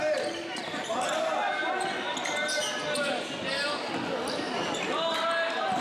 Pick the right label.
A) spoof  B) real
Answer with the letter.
B